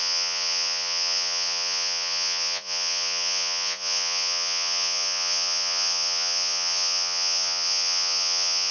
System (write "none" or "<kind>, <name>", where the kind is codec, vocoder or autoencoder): vocoder, Vocos